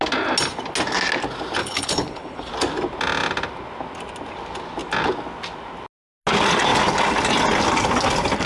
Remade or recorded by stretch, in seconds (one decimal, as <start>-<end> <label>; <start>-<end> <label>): 0.0-1.6 recorded; 1.6-2.5 remade; 2.5-8.5 recorded